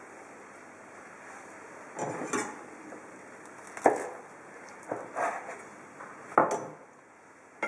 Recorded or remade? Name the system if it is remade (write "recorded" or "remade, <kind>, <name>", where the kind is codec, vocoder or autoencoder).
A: recorded